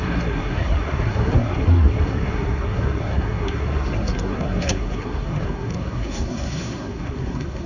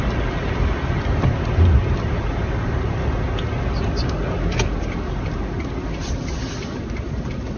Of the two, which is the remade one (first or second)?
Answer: first